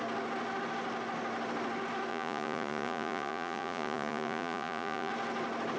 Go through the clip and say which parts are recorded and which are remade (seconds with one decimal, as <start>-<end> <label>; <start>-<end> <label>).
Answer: 0.0-2.1 recorded; 2.1-5.1 remade; 5.1-5.8 recorded